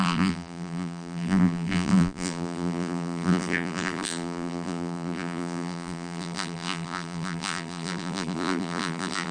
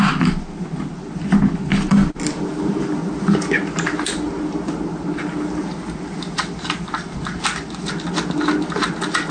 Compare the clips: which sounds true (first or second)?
second